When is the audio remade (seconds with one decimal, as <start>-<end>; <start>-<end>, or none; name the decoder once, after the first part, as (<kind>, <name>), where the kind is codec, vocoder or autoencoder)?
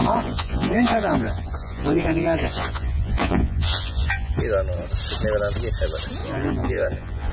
0.0-4.4 (vocoder, Vocos); 6.2-7.3